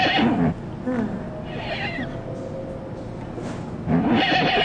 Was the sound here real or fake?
real